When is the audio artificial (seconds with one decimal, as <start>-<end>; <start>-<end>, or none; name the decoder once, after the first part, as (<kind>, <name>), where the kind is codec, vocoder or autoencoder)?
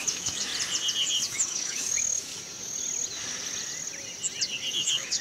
0.0-0.5 (autoencoder, DAC-VAE); 1.3-2.3; 4.7-5.2